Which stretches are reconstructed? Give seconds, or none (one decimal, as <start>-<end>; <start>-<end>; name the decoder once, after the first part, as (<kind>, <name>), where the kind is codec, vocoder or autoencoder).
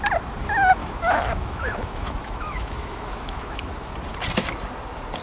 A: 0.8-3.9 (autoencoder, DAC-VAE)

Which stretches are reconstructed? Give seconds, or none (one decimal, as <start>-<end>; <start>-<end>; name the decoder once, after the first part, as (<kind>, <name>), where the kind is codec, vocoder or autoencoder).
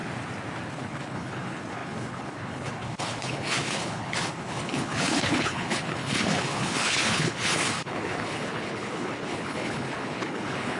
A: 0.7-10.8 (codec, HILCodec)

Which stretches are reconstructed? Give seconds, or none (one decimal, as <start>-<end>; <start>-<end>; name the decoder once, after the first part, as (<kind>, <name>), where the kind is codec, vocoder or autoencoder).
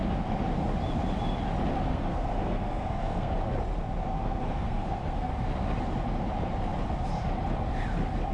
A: 1.9-3.3 (codec, SNAC); 4.1-5.3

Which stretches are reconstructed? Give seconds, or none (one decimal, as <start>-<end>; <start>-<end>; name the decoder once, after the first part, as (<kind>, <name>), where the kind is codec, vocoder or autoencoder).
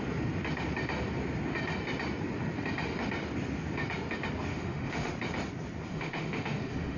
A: 4.5-5.1 (autoencoder, DAC-VAE); 5.9-7.0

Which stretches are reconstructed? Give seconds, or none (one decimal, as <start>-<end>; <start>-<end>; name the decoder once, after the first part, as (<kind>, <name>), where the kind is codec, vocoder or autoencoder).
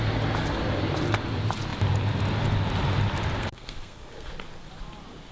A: 3.4-4.3 (codec, SNAC)